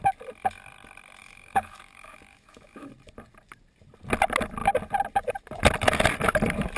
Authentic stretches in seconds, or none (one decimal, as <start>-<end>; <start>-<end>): 0.0-1.2; 2.9-6.8